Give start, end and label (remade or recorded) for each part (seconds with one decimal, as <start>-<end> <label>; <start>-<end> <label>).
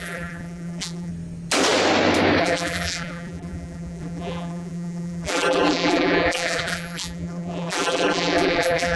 0.0-1.1 remade; 1.1-2.4 recorded; 2.4-9.0 remade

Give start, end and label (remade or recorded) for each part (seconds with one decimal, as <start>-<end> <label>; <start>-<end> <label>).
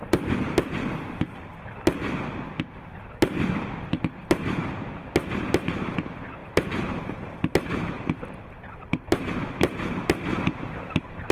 0.0-4.2 recorded; 4.2-4.7 remade; 4.7-6.4 recorded; 6.4-9.3 remade; 9.3-10.3 recorded; 10.3-11.3 remade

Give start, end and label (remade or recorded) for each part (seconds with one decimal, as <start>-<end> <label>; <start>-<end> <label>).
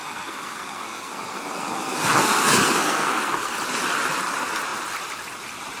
0.0-3.5 remade; 3.5-5.8 recorded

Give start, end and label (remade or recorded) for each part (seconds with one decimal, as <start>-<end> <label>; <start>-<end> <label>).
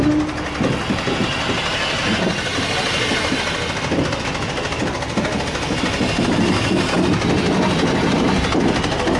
0.0-9.2 recorded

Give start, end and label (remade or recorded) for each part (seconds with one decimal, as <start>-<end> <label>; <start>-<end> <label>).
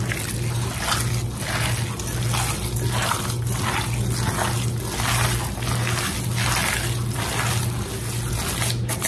0.0-9.1 recorded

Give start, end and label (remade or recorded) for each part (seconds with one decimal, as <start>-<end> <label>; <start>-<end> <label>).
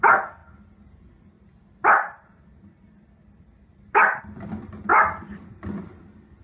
0.0-4.9 recorded; 4.9-5.6 remade; 5.6-6.4 recorded